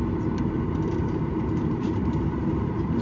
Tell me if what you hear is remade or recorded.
remade